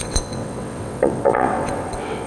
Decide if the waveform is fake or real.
fake